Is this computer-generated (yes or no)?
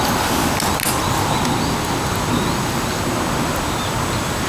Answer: no